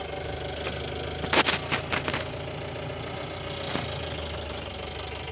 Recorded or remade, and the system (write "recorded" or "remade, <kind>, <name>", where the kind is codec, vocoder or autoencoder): recorded